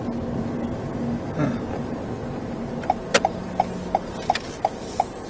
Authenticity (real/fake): real